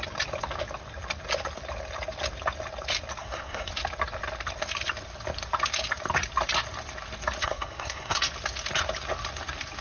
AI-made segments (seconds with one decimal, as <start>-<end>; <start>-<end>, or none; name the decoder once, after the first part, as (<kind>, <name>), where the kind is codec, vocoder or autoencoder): 3.2-3.7 (codec, SNAC); 7.4-8.2